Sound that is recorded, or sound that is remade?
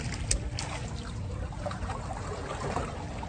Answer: recorded